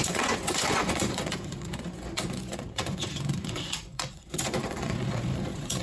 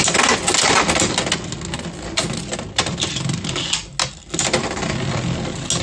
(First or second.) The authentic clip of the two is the second